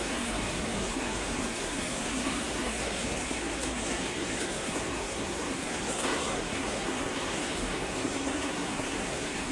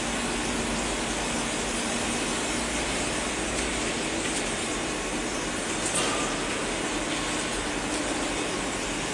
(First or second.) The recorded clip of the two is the second